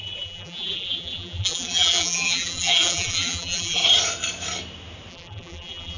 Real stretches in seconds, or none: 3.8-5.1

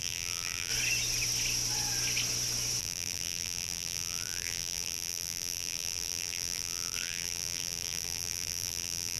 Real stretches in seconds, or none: 0.7-2.8

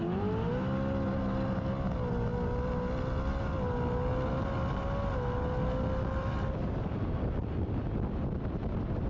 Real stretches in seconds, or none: 0.0-6.2; 7.9-9.1

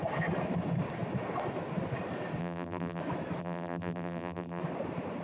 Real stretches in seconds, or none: 0.0-2.4; 3.0-3.4; 4.6-5.2